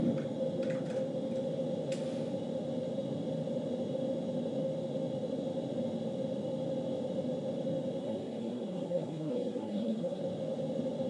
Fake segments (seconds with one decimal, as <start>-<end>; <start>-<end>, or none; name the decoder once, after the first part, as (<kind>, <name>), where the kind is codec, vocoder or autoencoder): 8.0-10.2 (codec, SNAC)